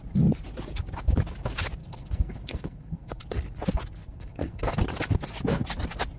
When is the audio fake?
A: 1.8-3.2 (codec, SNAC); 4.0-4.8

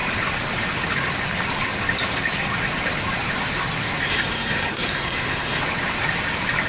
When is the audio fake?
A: 4.1-5.6 (codec, SNAC)